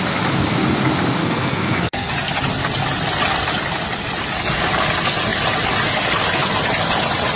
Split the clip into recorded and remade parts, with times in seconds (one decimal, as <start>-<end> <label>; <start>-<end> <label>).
0.0-1.2 recorded; 1.2-2.1 remade; 2.1-7.4 recorded